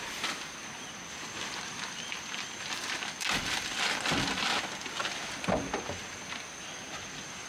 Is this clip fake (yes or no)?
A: no